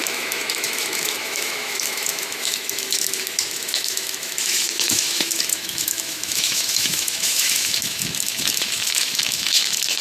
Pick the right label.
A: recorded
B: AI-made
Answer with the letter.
B